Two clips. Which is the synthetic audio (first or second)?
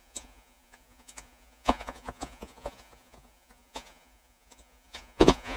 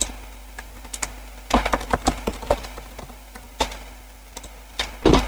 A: first